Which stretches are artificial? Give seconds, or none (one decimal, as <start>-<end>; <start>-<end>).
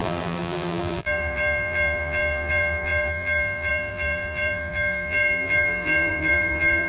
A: 0.0-6.9